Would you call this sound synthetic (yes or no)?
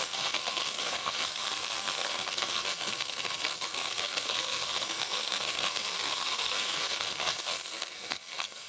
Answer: yes